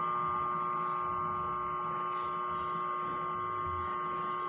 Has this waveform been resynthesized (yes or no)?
no